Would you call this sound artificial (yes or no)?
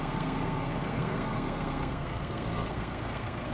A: yes